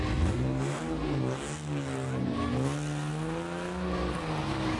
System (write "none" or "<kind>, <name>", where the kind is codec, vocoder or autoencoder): none